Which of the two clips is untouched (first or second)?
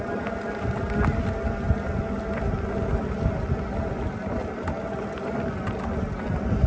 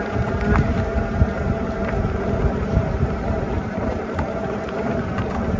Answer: first